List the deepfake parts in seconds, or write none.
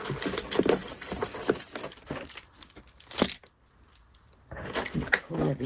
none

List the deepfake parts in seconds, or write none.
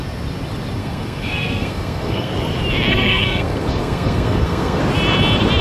0.8-2.3; 2.9-4.8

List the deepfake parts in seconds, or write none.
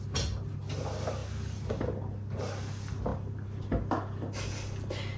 none